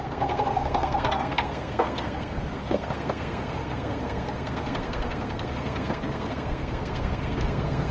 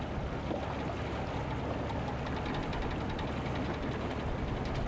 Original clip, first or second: second